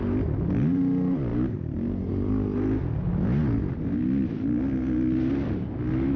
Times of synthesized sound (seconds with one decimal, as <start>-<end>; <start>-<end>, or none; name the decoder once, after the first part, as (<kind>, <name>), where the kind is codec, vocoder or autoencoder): 1.3-2.1 (vocoder, BigVGAN v2)